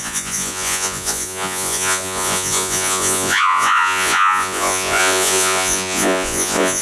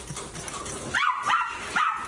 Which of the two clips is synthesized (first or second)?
first